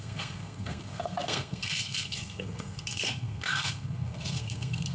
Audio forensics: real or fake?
fake